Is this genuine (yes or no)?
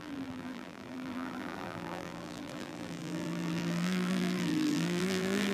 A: no